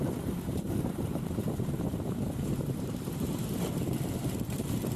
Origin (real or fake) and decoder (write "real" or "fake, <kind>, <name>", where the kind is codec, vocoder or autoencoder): fake, vocoder, BigVGAN v2